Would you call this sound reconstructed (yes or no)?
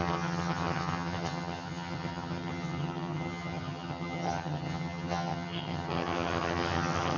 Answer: yes